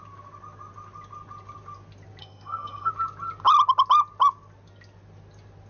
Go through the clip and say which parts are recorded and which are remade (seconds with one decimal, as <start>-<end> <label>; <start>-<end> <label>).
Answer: 0.0-2.2 recorded; 2.2-2.9 remade; 2.9-5.7 recorded